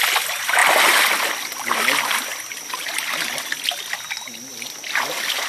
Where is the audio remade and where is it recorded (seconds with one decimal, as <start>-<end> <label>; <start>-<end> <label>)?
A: 0.0-5.5 recorded